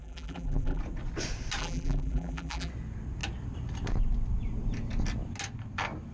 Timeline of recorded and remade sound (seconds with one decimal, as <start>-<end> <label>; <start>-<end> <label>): 0.0-0.8 remade; 0.8-1.6 recorded; 1.6-2.7 remade; 2.7-6.1 recorded